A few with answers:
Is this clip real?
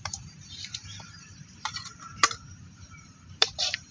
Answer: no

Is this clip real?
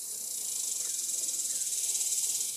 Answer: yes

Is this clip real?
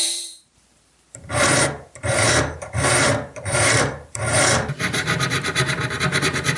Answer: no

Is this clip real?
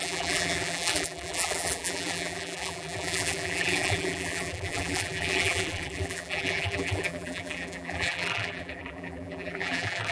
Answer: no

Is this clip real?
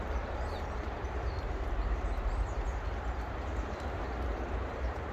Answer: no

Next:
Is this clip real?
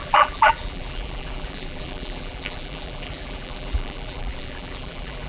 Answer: no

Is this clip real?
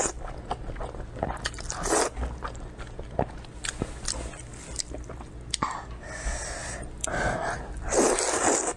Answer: yes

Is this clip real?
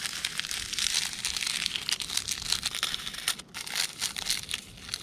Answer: yes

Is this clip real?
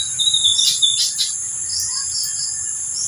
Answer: yes